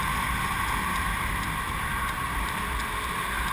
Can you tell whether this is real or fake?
fake